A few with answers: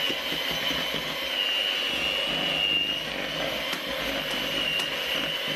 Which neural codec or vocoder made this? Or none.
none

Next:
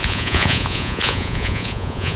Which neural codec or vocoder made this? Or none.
vocoder, Vocos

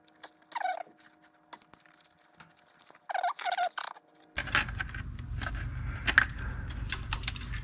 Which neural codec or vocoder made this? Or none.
none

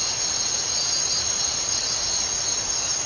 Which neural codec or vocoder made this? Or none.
none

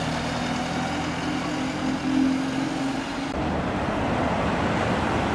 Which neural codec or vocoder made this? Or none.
none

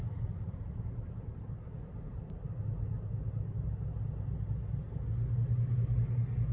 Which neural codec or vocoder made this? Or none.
none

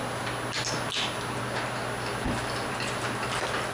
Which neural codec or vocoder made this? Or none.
none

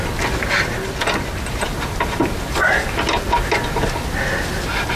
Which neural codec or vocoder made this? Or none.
none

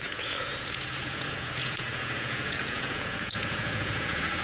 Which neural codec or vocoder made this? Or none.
vocoder, Vocos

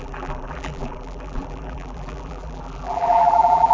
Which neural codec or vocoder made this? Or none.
vocoder, BigVGAN v2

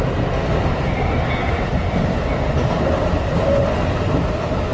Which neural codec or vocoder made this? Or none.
none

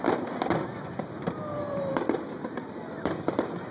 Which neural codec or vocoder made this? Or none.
vocoder, BigVGAN v2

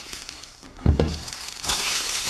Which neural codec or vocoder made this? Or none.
codec, SNAC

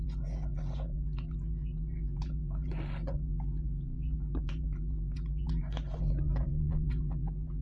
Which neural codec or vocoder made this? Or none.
vocoder, Vocos